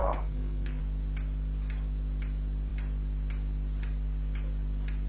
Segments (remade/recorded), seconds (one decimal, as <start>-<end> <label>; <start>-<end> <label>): 0.0-0.8 remade; 0.8-5.1 recorded